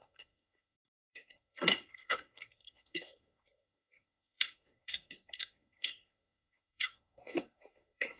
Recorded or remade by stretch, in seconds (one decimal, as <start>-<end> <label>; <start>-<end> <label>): 0.0-8.2 remade